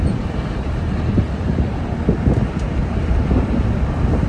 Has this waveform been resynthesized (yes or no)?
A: no